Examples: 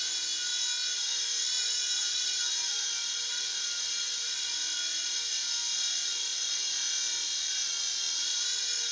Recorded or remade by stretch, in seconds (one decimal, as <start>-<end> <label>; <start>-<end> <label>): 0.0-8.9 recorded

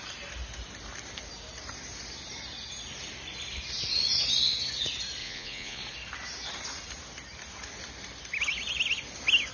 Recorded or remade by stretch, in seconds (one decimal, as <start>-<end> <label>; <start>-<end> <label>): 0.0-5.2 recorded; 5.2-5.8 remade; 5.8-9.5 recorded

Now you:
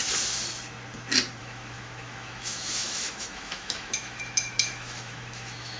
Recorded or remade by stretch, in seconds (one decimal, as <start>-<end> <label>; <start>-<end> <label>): 0.0-1.4 recorded; 1.4-5.8 remade

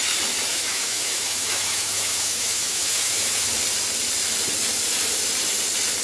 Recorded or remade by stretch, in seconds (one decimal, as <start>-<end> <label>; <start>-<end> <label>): 0.0-0.5 recorded; 0.5-3.5 remade; 3.5-6.0 recorded

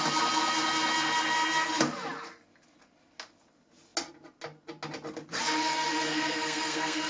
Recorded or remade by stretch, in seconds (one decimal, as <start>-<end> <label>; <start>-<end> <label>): 0.0-6.1 recorded; 6.1-7.1 remade

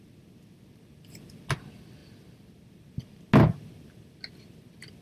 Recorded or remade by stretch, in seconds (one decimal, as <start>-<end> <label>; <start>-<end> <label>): 0.0-5.0 recorded